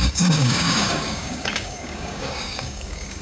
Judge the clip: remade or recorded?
remade